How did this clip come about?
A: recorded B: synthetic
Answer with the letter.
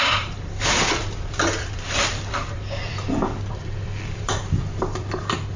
B